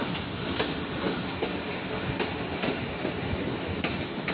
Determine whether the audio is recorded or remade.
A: recorded